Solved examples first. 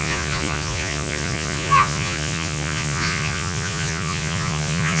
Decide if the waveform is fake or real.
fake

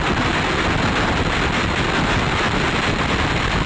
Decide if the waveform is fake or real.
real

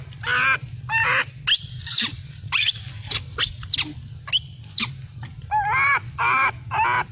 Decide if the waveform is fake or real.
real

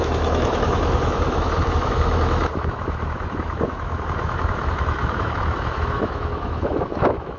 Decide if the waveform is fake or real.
fake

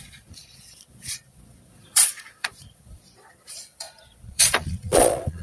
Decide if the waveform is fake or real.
fake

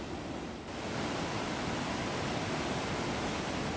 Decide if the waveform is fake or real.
real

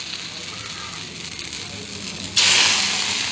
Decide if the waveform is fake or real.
real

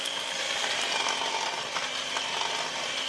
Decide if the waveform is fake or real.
real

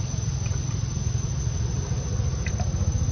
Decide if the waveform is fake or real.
real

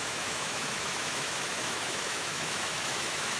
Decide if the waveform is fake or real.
fake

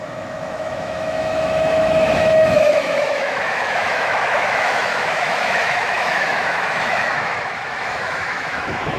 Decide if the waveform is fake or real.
fake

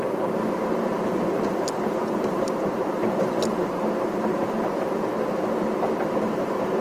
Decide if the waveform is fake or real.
fake